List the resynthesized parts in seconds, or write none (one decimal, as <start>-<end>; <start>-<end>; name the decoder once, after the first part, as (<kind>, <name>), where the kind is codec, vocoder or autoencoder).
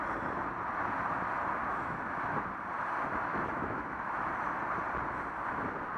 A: 1.6-2.2 (autoencoder, DAC-VAE); 3.3-4.3